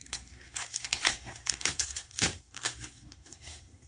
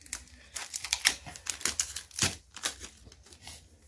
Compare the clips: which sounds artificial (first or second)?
first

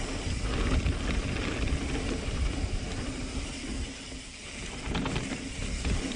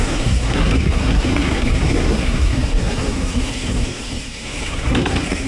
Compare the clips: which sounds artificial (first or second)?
second